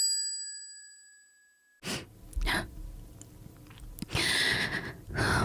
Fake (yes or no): no